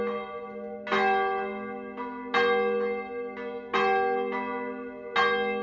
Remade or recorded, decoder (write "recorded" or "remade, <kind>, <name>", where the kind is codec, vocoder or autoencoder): recorded